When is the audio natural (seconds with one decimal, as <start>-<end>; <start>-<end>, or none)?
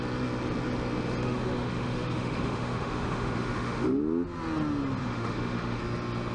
0.0-1.2; 4.0-5.0; 5.8-6.3